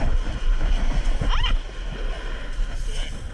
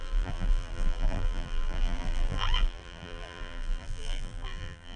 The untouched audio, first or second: first